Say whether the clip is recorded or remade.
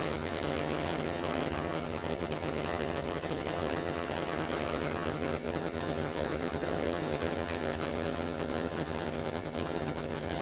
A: remade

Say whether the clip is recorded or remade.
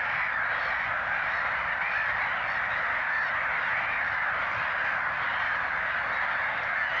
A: recorded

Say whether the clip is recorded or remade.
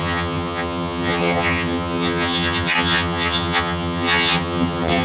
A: remade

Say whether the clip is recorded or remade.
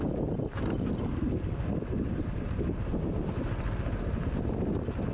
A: recorded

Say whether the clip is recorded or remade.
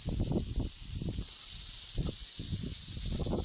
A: recorded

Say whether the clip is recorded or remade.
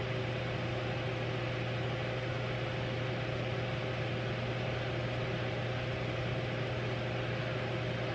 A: recorded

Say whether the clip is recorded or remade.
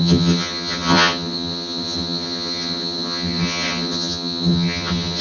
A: remade